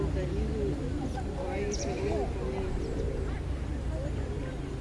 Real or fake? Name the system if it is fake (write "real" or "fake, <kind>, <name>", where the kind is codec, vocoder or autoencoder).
real